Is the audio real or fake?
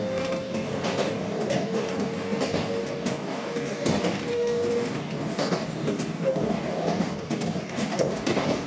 fake